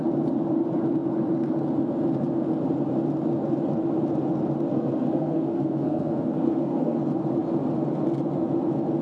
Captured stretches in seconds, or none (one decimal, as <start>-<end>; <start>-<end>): 0.0-4.7; 7.0-9.0